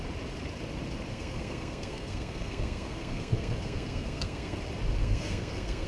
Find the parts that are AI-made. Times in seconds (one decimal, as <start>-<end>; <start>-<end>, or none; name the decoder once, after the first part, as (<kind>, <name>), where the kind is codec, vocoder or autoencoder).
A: 1.1-4.6 (codec, SNAC); 5.0-5.9